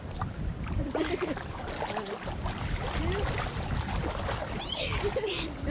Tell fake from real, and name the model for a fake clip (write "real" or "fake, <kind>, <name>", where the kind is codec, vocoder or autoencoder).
real